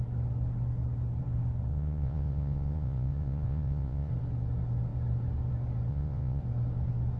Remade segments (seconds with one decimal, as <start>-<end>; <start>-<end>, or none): 1.7-4.1; 5.9-6.4